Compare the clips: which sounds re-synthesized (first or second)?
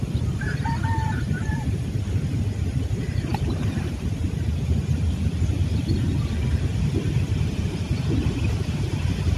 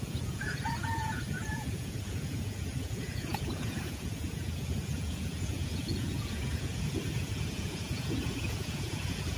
second